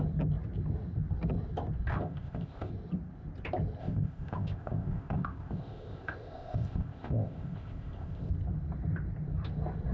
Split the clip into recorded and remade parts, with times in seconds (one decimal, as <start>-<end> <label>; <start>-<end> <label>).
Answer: 0.0-1.9 recorded; 1.9-2.7 remade; 2.7-3.8 recorded; 3.8-8.3 remade; 8.3-9.9 recorded